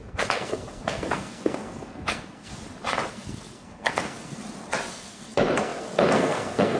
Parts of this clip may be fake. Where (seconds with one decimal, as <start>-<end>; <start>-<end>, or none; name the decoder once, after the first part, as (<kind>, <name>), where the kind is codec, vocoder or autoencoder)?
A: 0.0-2.5 (codec, SNAC); 3.1-4.4; 4.9-6.8